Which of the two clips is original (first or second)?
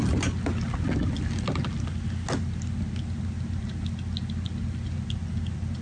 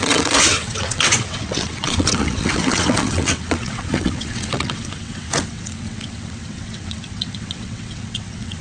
first